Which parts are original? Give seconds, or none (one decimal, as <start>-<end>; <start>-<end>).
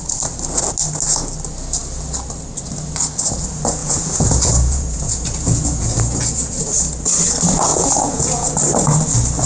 0.0-3.8; 6.6-7.7; 8.5-9.5